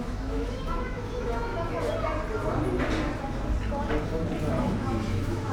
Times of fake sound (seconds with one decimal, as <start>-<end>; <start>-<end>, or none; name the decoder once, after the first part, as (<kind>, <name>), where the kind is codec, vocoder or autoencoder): 0.0-1.5 (autoencoder, DAC-VAE); 4.6-5.5